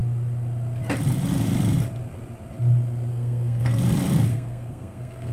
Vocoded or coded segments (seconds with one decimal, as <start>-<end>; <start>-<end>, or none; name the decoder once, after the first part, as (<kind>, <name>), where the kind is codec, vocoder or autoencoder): 3.1-3.8 (codec, SNAC); 4.3-5.3